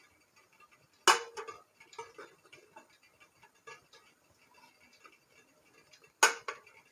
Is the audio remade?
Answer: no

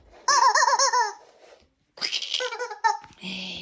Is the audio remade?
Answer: no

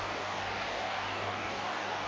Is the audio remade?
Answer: yes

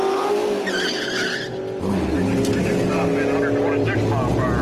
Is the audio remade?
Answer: no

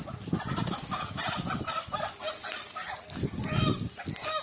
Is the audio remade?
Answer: no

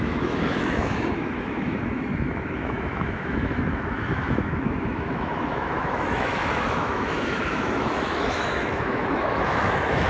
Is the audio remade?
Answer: yes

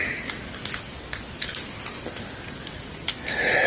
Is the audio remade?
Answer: no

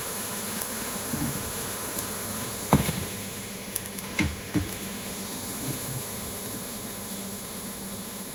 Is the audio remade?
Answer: yes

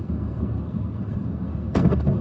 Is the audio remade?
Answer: yes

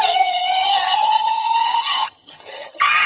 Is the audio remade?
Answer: yes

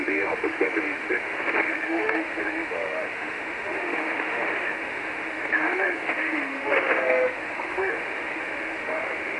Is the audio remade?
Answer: yes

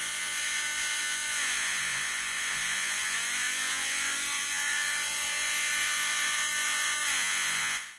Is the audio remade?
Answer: yes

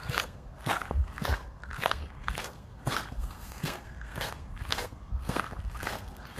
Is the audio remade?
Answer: yes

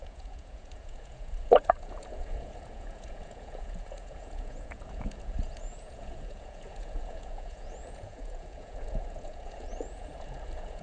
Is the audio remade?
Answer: yes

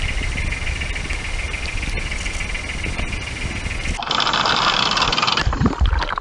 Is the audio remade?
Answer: no